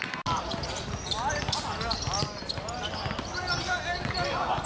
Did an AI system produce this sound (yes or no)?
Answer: no